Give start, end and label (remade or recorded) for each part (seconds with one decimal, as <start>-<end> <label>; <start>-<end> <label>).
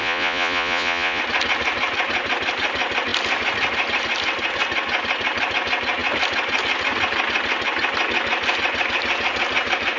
0.0-1.2 remade; 1.2-10.0 recorded